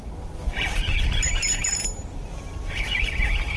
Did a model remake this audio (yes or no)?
no